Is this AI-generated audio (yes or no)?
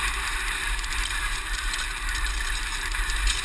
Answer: yes